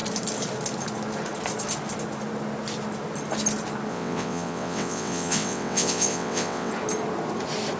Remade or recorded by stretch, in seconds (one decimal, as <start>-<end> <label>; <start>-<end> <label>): 0.0-3.9 recorded; 3.9-6.7 remade; 6.7-7.8 recorded